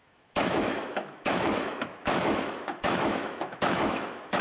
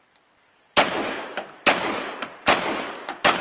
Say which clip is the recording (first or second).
second